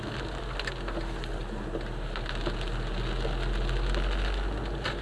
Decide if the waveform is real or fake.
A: real